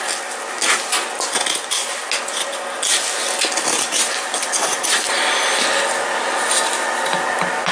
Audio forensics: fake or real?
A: real